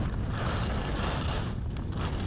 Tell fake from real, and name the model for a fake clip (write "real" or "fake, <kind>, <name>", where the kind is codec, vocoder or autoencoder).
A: real